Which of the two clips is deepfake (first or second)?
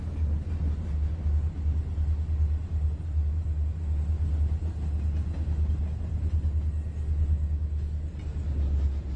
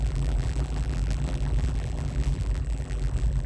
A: second